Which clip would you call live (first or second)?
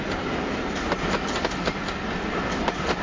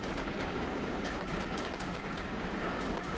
first